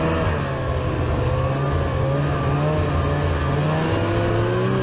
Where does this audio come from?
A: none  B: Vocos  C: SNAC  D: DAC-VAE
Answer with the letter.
A